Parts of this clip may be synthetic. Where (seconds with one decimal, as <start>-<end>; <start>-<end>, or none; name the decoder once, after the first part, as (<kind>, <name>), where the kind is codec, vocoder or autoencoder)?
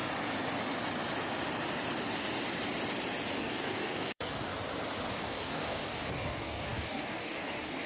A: 3.3-4.5 (codec, DAC); 5.1-7.9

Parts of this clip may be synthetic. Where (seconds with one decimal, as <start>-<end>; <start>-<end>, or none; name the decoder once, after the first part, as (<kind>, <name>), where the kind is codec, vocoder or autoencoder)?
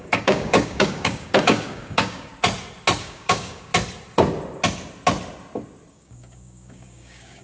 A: 0.0-2.3 (codec, DAC); 3.0-3.7; 5.9-7.4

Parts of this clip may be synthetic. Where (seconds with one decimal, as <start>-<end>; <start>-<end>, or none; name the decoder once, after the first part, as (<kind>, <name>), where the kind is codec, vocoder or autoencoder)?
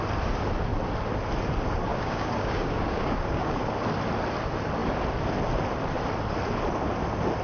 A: 1.9-3.6 (codec, DAC)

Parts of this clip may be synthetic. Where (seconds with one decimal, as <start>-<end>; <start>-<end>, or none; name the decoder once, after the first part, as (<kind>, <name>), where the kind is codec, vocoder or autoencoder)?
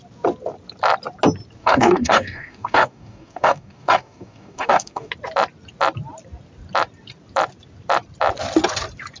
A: 1.6-5.1 (codec, DAC)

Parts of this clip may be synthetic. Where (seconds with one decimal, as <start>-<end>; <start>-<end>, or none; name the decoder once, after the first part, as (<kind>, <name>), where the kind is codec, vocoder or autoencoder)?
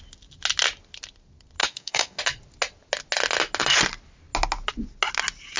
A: 1.6-2.2 (codec, DAC)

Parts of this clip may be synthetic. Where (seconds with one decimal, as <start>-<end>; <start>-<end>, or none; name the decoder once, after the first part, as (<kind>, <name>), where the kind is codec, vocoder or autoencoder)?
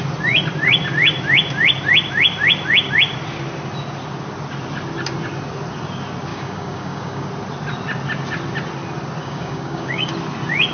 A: 6.3-7.3 (codec, DAC); 9.2-10.1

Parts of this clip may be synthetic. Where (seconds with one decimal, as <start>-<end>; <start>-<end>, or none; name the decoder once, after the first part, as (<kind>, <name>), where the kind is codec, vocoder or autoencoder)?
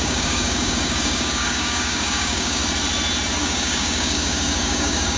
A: 0.0-2.6 (codec, DAC); 3.4-5.2